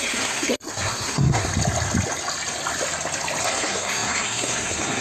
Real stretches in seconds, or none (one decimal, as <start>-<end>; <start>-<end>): 1.5-3.4